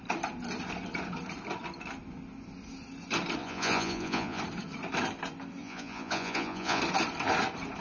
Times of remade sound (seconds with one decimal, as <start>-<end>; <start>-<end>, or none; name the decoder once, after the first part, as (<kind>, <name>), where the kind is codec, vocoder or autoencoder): 3.4-4.4 (vocoder, Vocos); 5.6-6.8